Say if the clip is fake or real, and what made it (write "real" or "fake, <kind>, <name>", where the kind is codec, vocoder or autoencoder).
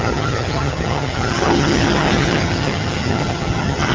fake, vocoder, HiFi-GAN